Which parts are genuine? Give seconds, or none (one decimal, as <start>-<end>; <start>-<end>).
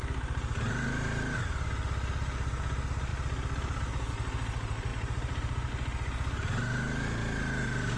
0.0-4.9; 5.7-8.0